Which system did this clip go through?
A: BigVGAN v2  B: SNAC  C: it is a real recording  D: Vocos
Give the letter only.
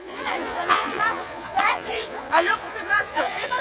D